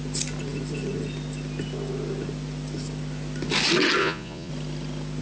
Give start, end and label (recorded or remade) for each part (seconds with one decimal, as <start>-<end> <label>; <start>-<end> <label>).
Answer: 0.0-4.0 recorded; 4.0-4.5 remade; 4.5-5.2 recorded